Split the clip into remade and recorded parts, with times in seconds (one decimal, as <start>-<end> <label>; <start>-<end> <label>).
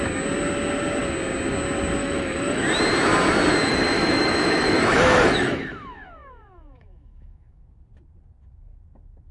0.0-2.0 recorded; 2.0-2.6 remade; 2.6-3.7 recorded; 3.7-7.6 remade; 7.6-9.3 recorded